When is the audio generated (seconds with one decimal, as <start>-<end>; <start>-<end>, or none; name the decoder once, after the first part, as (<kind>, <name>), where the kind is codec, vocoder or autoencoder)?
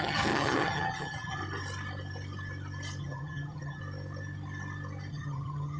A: 0.0-1.4 (vocoder, HiFi-GAN); 3.0-3.8; 5.1-5.8